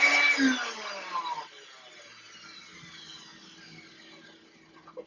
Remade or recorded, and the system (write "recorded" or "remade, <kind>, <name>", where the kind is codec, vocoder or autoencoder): recorded